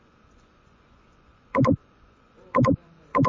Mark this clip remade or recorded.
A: remade